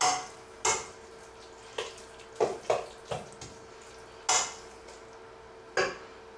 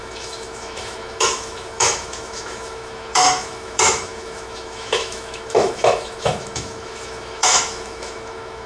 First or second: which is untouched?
first